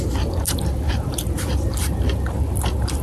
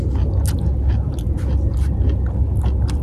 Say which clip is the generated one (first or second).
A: first